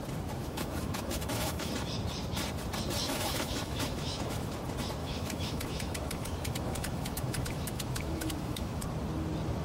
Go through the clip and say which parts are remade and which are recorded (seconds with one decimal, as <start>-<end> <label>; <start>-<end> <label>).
0.0-0.4 recorded; 0.4-1.7 remade; 1.7-3.0 recorded; 3.0-4.5 remade; 4.5-5.0 recorded; 5.0-8.8 remade; 8.8-9.6 recorded